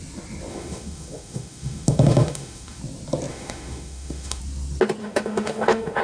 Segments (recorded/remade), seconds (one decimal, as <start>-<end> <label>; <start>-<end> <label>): 0.0-0.5 recorded; 0.5-2.8 remade; 2.8-3.3 recorded; 3.3-4.4 remade; 4.4-5.0 recorded; 5.0-6.0 remade

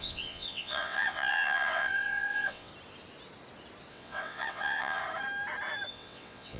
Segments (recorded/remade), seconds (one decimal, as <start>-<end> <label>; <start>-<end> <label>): 0.0-2.7 remade; 2.7-3.9 recorded; 3.9-5.0 remade; 5.0-5.9 recorded; 5.9-6.6 remade

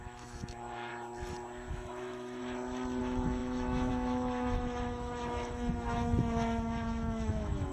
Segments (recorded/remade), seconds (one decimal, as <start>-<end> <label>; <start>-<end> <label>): 0.0-0.9 remade; 0.9-1.7 recorded; 1.7-2.4 remade; 2.4-3.0 recorded; 3.0-7.7 remade

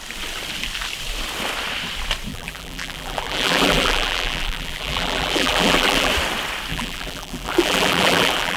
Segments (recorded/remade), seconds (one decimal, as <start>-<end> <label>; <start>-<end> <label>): 0.0-2.3 recorded; 2.3-6.1 remade; 6.1-6.7 recorded; 6.7-8.6 remade

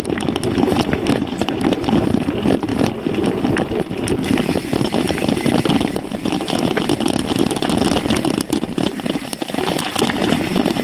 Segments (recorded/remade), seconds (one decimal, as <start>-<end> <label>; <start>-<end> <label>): 0.0-10.8 recorded